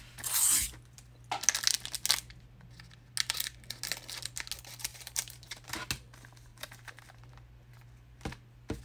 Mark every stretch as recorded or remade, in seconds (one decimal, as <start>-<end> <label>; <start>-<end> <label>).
0.0-4.9 recorded; 4.9-5.7 remade; 5.7-6.5 recorded; 6.5-7.3 remade; 7.3-8.8 recorded